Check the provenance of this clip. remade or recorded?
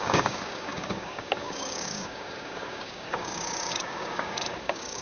remade